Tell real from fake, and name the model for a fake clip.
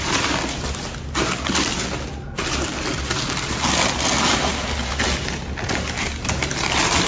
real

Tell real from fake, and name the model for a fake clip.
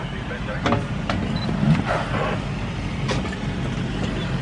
real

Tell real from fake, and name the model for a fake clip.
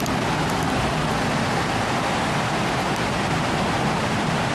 real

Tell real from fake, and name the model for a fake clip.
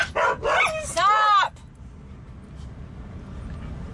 real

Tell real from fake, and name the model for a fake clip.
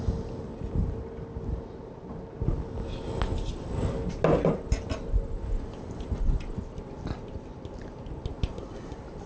real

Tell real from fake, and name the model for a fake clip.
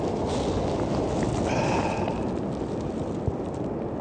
real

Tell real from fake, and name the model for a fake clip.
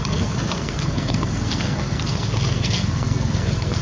fake, codec, SNAC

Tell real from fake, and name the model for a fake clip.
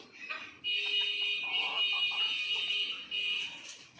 real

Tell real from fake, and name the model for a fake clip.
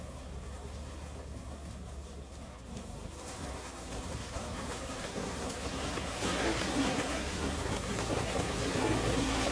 fake, codec, SNAC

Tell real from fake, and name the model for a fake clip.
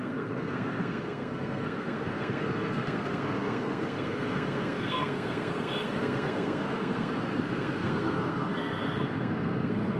fake, codec, SNAC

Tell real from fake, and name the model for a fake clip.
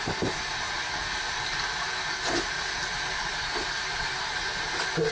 real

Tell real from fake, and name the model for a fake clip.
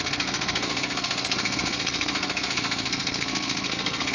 fake, codec, SNAC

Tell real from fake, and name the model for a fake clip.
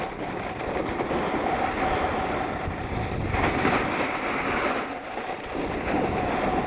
real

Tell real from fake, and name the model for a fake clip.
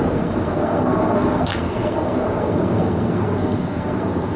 fake, codec, SNAC